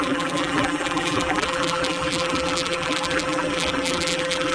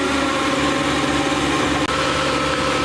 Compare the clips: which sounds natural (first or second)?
second